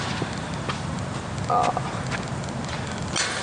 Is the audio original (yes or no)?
yes